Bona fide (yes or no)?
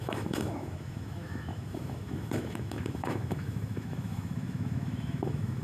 no